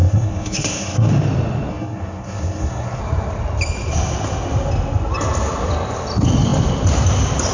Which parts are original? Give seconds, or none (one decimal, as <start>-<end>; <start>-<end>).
1.1-1.7; 3.0-7.5